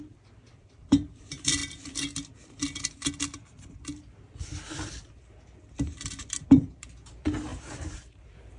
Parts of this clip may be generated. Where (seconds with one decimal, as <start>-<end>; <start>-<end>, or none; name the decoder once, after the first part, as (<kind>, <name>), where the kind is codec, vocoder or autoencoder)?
0.0-1.6 (vocoder, BigVGAN v2); 6.4-8.6